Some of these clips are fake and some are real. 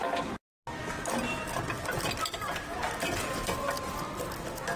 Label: real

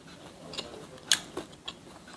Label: real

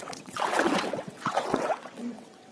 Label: fake